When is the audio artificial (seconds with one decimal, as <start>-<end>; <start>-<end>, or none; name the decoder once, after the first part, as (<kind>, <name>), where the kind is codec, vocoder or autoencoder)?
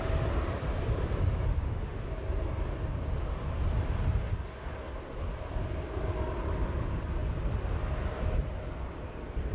1.5-2.1 (autoencoder, DAC-VAE)